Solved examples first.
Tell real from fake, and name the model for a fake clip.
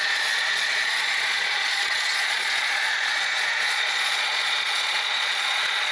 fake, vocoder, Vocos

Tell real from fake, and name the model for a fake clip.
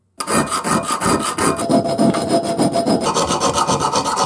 real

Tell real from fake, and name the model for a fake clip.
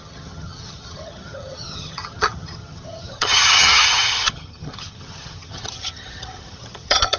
fake, vocoder, HiFi-GAN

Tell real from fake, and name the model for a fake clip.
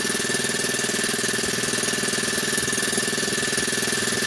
real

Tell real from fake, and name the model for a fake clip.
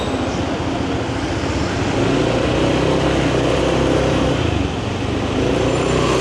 real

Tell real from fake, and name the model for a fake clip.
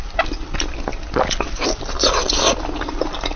real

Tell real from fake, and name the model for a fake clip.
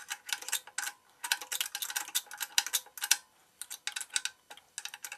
real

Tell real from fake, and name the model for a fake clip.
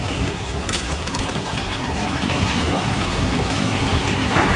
fake, codec, SNAC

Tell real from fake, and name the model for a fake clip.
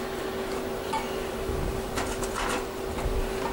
real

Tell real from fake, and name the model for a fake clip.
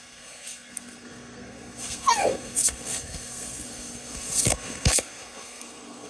fake, codec, SNAC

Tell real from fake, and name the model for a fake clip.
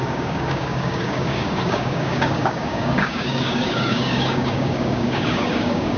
fake, codec, DAC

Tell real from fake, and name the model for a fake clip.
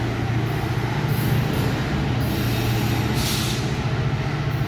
real